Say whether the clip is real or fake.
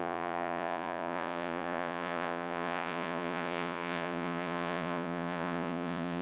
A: fake